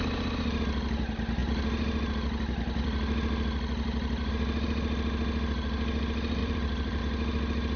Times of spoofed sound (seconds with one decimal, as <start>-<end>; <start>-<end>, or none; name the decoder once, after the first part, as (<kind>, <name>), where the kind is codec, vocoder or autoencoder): 6.4-7.0 (vocoder, BigVGAN v2)